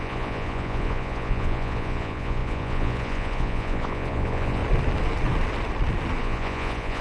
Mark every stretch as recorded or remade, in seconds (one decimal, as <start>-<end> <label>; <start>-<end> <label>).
0.0-4.6 remade; 4.6-6.2 recorded; 6.2-7.0 remade